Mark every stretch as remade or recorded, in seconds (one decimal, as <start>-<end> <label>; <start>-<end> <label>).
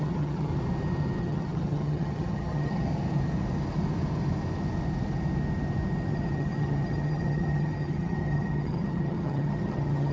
0.0-0.5 remade; 0.5-1.2 recorded; 1.2-2.9 remade; 2.9-6.1 recorded; 6.1-10.1 remade